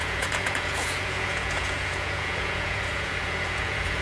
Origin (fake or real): fake